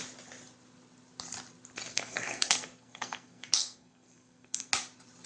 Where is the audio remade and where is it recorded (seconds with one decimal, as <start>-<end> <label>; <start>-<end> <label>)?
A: 0.0-1.9 recorded; 1.9-4.7 remade; 4.7-5.3 recorded